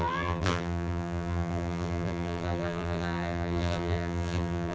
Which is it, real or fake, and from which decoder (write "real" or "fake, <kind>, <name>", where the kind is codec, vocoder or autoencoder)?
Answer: fake, vocoder, BigVGAN v2